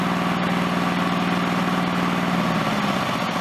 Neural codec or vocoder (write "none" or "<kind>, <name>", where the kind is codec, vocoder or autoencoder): none